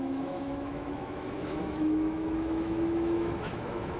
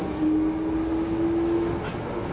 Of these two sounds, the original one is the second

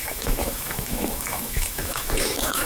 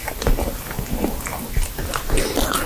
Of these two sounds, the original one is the second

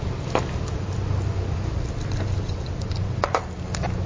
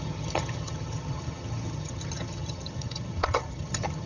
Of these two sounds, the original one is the first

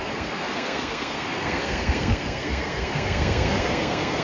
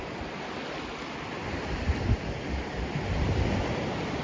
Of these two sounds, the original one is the second